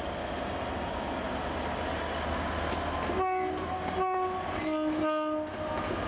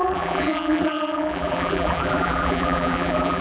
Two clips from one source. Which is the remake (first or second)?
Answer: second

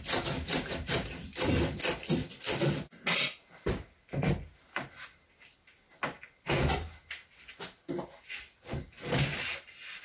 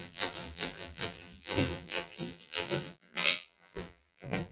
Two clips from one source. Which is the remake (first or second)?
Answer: second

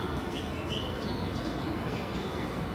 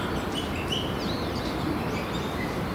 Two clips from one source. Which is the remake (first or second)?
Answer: first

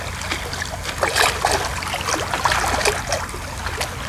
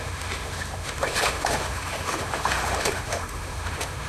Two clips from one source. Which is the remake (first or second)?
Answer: second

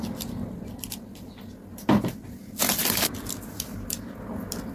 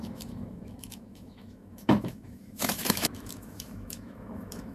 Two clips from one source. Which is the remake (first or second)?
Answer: second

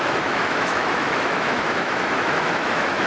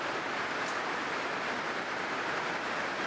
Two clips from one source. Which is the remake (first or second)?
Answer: first